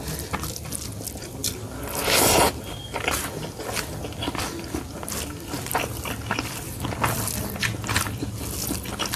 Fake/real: real